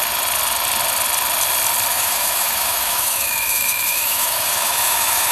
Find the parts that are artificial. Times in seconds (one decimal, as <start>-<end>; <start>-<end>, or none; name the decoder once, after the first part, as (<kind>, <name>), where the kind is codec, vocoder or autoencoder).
1.9-5.3 (autoencoder, DAC-VAE)